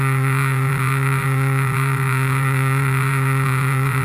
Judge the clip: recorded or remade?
remade